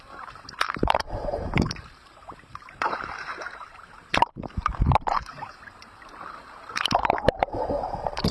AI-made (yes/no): yes